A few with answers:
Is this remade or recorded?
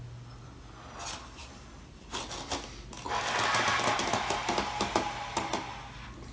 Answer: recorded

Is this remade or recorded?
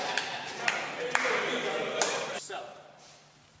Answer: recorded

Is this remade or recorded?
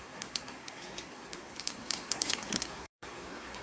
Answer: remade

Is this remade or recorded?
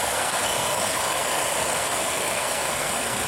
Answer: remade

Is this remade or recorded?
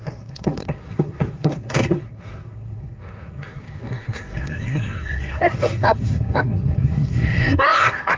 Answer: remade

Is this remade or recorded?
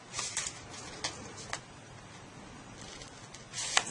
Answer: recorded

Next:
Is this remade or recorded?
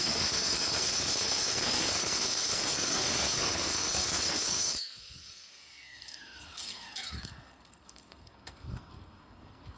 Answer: remade